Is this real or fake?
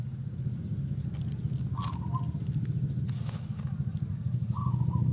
real